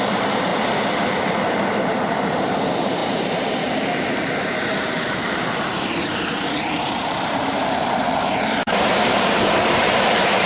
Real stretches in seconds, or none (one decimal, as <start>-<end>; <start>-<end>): 0.5-1.4